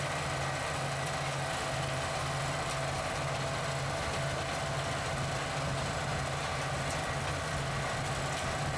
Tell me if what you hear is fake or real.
real